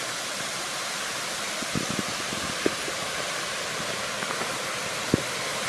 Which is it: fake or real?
real